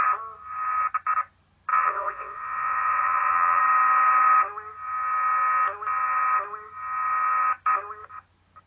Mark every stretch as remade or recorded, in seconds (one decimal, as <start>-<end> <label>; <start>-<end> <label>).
0.0-1.7 recorded; 1.7-3.6 remade; 3.6-8.7 recorded